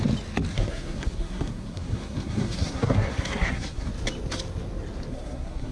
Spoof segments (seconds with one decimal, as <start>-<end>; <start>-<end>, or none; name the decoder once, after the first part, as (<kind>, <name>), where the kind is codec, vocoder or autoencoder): 0.5-3.9 (codec, SNAC); 5.1-5.7